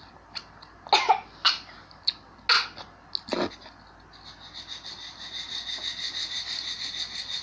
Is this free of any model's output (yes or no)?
yes